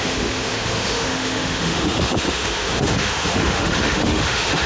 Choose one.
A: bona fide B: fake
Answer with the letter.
B